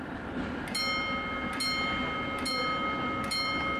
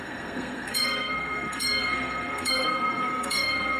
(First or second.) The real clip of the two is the first